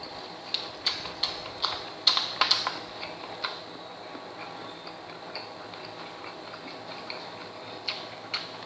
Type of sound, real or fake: real